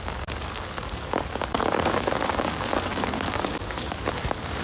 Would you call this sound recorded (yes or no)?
no